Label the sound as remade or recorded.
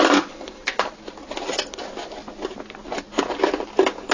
recorded